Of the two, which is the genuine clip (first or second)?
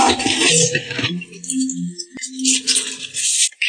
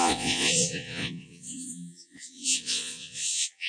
first